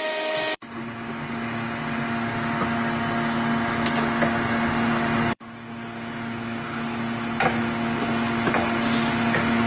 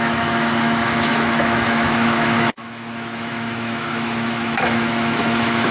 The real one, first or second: first